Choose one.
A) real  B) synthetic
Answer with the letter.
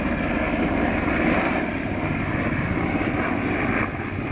A